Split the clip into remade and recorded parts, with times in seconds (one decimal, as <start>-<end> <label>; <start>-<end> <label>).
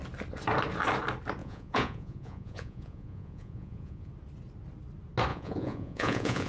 0.0-1.4 recorded; 1.4-4.1 remade; 4.1-5.3 recorded; 5.3-6.5 remade